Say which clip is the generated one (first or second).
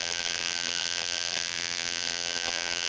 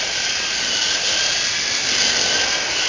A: first